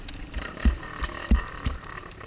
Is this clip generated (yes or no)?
yes